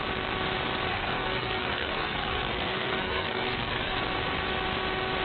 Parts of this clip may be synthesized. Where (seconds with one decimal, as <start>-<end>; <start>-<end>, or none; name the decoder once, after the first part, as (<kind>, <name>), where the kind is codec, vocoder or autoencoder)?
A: 0.9-4.0 (codec, SNAC)